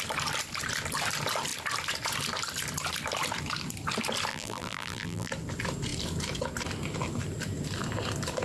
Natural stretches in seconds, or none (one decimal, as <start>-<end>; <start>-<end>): 0.0-4.3; 5.3-8.4